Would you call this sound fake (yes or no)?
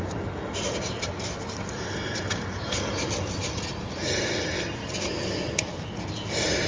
no